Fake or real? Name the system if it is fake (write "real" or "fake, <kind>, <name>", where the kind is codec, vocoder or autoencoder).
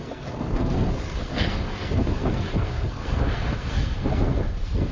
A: fake, codec, SNAC